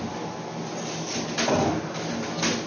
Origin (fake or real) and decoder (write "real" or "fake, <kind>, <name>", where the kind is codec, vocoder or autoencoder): real